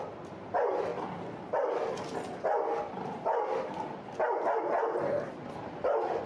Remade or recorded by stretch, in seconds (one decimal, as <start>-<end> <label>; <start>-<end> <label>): 0.0-6.3 recorded